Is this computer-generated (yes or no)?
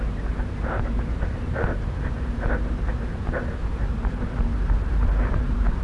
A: yes